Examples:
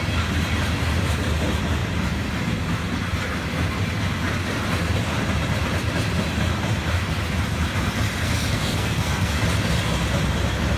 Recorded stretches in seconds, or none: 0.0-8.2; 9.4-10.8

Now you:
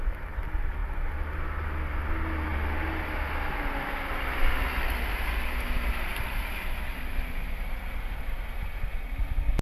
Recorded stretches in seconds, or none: 0.0-9.6

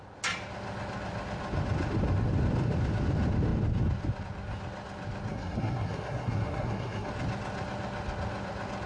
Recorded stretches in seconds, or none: 0.0-5.3; 7.1-8.9

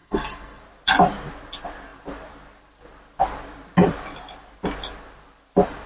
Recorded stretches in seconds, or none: 0.6-5.9